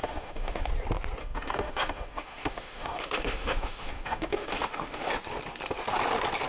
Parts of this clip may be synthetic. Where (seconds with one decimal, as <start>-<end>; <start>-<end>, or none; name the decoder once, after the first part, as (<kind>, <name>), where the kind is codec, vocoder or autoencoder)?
0.0-0.7 (autoencoder, DAC-VAE); 1.2-5.1